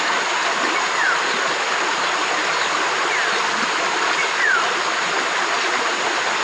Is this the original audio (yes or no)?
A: yes